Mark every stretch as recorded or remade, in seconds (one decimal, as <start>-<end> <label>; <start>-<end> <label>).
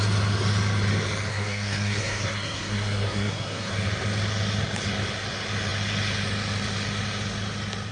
0.0-1.3 recorded; 1.3-3.7 remade; 3.7-7.9 recorded